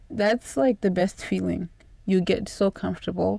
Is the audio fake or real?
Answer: fake